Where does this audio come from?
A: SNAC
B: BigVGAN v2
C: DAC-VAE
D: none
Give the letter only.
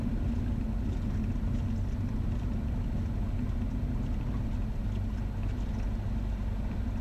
D